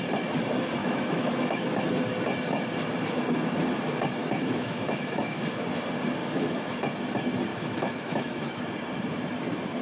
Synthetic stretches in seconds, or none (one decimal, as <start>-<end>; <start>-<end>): 0.8-1.9; 4.2-5.4; 6.2-6.8; 7.5-8.6